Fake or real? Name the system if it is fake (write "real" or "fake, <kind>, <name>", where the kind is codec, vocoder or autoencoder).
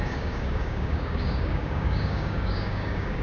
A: fake, codec, DAC